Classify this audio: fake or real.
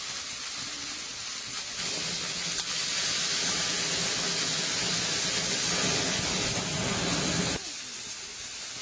real